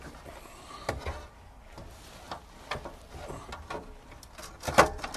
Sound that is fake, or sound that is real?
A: real